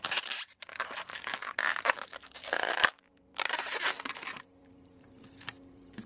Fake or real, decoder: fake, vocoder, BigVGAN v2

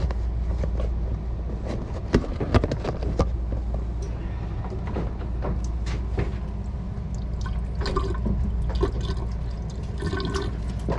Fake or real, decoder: real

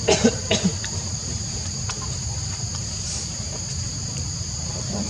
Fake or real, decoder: fake, vocoder, BigVGAN v2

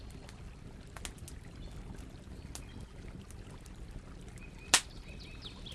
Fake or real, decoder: real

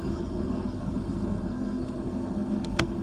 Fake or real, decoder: fake, codec, SNAC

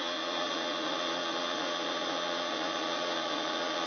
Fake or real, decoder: fake, vocoder, Vocos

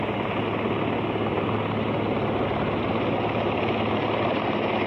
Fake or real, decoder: real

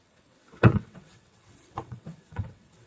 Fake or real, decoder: fake, vocoder, WaveNeXt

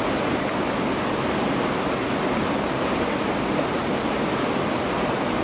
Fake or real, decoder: real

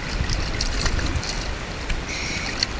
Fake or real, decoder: real